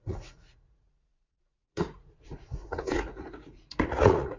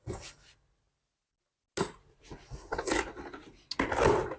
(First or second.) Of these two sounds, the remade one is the first